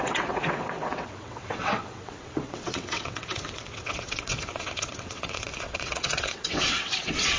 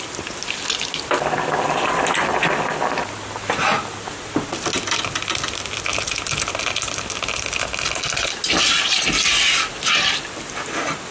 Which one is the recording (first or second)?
second